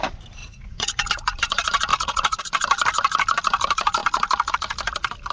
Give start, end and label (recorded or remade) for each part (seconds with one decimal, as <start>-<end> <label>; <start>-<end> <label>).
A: 0.0-0.4 recorded; 0.4-1.1 remade; 1.1-1.9 recorded; 1.9-2.4 remade; 2.4-5.3 recorded